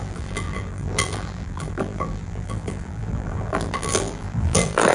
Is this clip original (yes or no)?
no